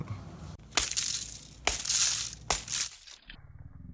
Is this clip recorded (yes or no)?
yes